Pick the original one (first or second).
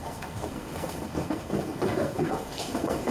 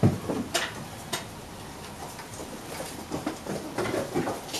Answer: second